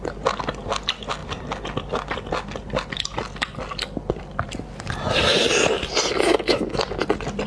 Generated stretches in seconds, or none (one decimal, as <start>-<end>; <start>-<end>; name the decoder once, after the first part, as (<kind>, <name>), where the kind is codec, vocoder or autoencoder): none